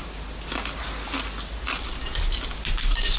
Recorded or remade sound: recorded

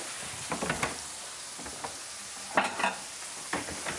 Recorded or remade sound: recorded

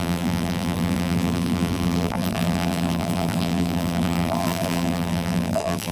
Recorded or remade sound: remade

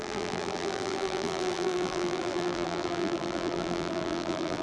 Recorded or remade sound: remade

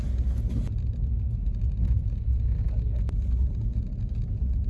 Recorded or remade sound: recorded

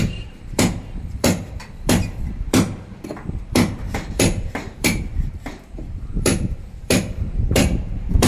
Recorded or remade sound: remade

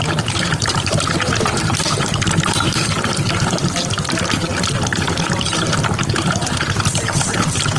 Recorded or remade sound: remade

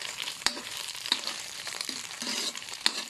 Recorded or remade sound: remade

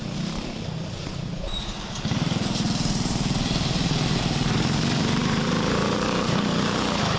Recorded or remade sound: remade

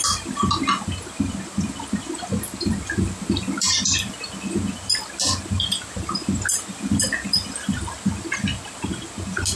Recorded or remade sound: recorded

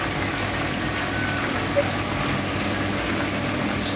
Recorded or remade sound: recorded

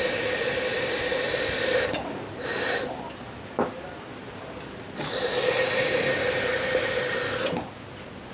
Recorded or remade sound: recorded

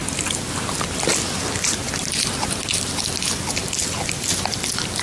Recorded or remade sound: recorded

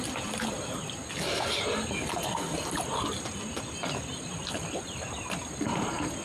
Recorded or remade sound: recorded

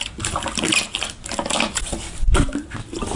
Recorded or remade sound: recorded